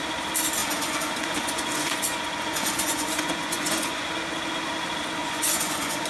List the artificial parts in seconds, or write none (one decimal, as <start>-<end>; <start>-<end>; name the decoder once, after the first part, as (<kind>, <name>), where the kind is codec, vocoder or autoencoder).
0.6-4.1 (vocoder, Vocos); 5.2-6.1